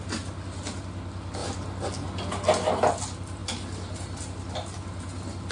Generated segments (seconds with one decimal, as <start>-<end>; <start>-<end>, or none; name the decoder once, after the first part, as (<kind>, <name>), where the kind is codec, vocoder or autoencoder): none